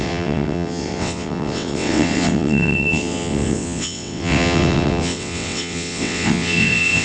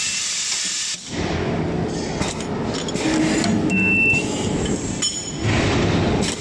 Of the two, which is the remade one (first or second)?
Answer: first